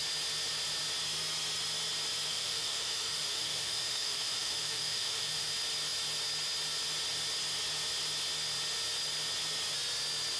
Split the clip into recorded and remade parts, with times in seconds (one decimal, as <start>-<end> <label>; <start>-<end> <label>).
0.0-2.3 recorded; 2.3-5.5 remade; 5.5-10.4 recorded

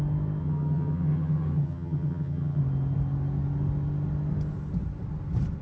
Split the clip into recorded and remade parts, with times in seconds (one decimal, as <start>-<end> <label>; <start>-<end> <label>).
0.0-0.4 recorded; 0.4-2.6 remade; 2.6-5.6 recorded

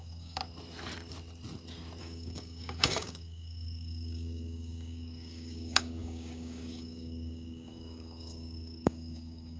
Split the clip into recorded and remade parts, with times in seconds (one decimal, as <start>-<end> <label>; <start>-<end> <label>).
0.0-0.4 remade; 0.4-2.0 recorded; 2.0-9.6 remade

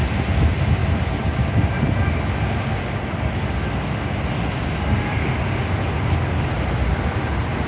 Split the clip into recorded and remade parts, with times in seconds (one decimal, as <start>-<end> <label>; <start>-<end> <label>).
0.0-7.7 recorded

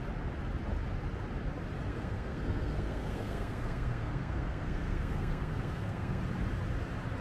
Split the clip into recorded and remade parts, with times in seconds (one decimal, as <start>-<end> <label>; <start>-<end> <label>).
0.0-1.9 recorded; 1.9-6.2 remade; 6.2-7.2 recorded

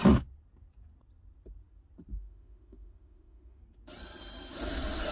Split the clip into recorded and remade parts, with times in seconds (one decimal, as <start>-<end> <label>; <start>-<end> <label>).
0.0-2.1 recorded; 2.1-3.6 remade; 3.6-5.1 recorded

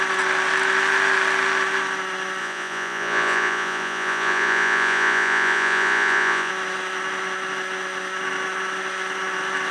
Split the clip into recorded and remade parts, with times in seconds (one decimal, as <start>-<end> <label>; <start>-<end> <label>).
0.0-2.4 recorded; 2.4-6.5 remade; 6.5-9.7 recorded

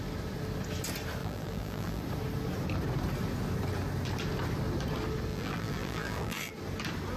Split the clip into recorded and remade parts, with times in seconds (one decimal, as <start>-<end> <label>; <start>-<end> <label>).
0.0-1.2 recorded; 1.2-2.0 remade; 2.0-5.3 recorded; 5.3-6.5 remade; 6.5-7.2 recorded